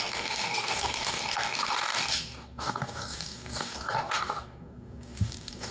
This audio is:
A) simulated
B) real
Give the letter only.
A